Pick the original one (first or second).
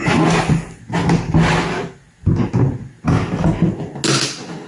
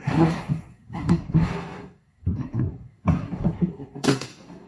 first